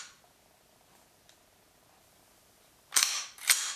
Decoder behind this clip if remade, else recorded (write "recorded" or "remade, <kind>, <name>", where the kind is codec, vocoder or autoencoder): recorded